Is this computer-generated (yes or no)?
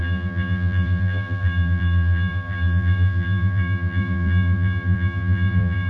yes